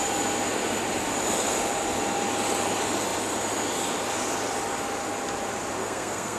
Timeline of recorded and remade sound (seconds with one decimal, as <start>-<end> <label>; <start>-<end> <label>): 0.0-5.8 recorded; 5.8-6.4 remade